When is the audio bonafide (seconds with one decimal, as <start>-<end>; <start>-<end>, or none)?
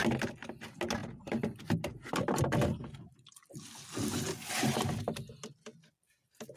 0.0-6.6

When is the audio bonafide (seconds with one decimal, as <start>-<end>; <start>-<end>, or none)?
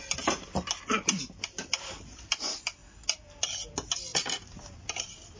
0.0-5.4